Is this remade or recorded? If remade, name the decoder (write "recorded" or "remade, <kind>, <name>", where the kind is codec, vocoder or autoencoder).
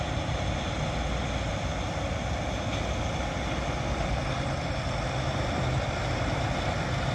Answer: recorded